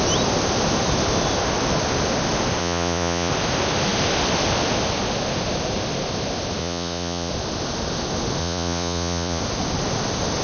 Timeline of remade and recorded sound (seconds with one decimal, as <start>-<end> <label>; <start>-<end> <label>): 0.0-2.6 recorded; 2.6-3.3 remade; 3.3-6.6 recorded; 6.6-7.3 remade; 7.3-8.4 recorded; 8.4-9.4 remade; 9.4-10.4 recorded